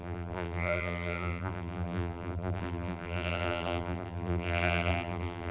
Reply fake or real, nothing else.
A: fake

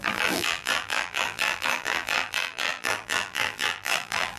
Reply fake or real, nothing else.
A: fake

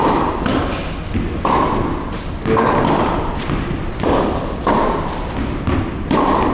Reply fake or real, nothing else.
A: real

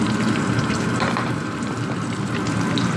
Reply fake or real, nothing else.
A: fake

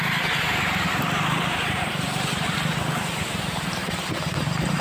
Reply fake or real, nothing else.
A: fake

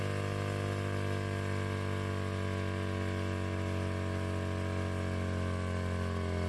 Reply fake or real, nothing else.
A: real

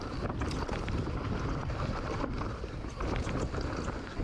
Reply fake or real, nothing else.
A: fake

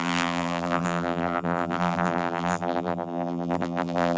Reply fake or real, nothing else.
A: fake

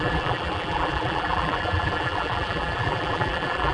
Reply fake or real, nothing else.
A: fake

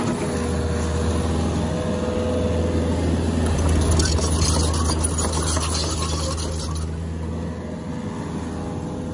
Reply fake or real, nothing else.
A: real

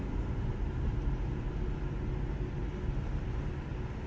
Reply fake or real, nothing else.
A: real